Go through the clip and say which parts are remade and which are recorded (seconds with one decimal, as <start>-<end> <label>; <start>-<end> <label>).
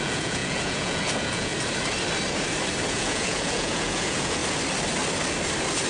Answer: 0.0-1.5 remade; 1.5-2.9 recorded; 2.9-4.4 remade; 4.4-5.9 recorded